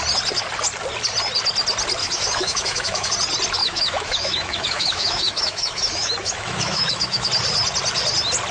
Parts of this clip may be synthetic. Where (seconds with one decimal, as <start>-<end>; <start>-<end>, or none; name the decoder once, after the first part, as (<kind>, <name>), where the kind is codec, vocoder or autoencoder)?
2.0-3.1 (autoencoder, DAC-VAE); 3.6-7.3